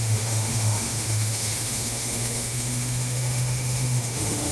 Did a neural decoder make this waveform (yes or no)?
yes